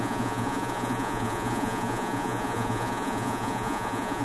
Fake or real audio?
fake